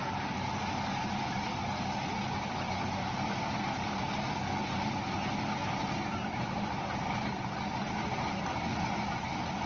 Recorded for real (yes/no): yes